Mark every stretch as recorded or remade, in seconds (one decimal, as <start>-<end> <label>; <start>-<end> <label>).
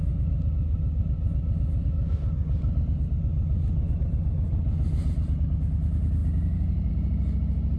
0.0-7.8 recorded